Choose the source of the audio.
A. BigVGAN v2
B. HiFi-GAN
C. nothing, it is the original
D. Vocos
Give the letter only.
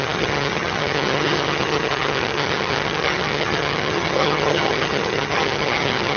B